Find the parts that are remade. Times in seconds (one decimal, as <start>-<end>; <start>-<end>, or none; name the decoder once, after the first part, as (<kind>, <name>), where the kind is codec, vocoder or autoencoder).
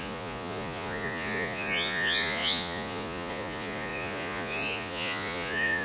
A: 0.0-5.8 (vocoder, Vocos)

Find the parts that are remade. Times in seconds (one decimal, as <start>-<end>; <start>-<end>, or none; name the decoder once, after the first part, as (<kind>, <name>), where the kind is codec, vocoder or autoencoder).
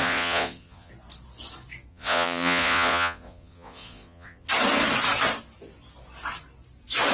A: 0.0-0.9 (vocoder, Vocos); 1.9-4.5